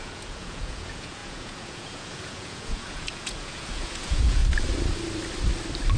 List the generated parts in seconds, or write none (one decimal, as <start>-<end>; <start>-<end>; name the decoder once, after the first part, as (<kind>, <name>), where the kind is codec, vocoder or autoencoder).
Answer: 0.0-4.4 (vocoder, Vocos)